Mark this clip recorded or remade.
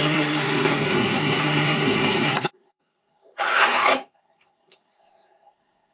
remade